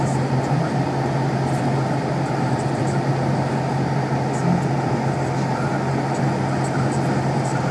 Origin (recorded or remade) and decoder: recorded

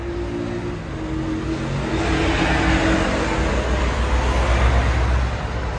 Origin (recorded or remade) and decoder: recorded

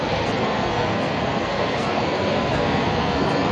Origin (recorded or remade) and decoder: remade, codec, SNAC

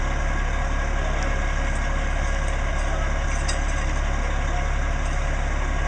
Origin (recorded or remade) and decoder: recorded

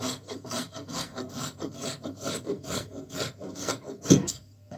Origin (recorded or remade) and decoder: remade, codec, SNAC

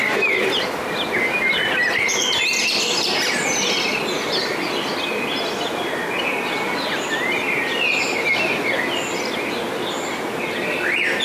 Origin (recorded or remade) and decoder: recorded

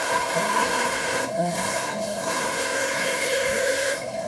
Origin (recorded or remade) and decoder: remade, codec, SNAC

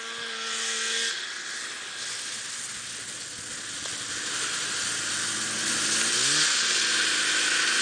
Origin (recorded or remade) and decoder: recorded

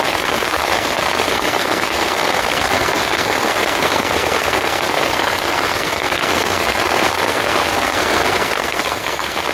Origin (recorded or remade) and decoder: remade, codec, SNAC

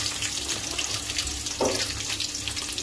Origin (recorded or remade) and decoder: recorded